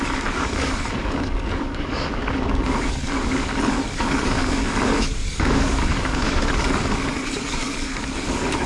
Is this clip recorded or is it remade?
remade